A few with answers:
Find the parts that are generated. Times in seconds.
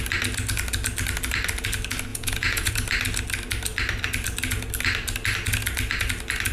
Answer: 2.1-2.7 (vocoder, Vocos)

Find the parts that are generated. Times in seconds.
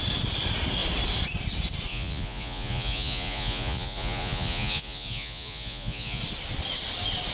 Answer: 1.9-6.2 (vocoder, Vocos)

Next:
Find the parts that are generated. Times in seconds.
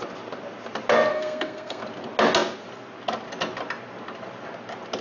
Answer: 1.1-1.8 (codec, SNAC)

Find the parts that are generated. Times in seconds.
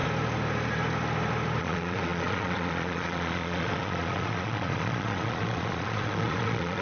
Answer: 1.6-6.8 (vocoder, Vocos)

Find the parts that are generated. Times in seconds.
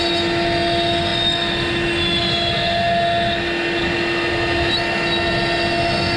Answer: none